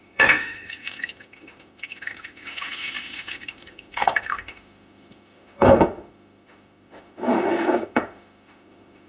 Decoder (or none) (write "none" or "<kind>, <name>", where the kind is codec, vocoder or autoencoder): autoencoder, DAC-VAE